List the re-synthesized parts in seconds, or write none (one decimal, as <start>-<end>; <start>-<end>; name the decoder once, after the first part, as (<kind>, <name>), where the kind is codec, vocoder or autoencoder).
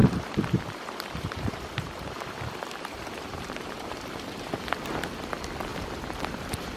0.0-4.1 (vocoder, BigVGAN v2); 5.7-6.8